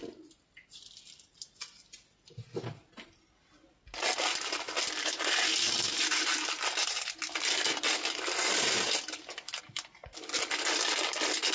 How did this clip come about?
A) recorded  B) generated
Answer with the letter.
A